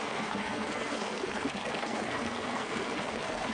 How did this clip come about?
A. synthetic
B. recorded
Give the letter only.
A